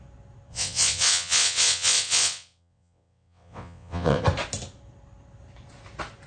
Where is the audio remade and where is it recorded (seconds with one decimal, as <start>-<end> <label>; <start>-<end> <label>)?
0.0-0.5 recorded; 0.5-4.2 remade; 4.2-6.3 recorded